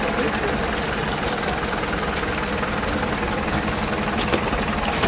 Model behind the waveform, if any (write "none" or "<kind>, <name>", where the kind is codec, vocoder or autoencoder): none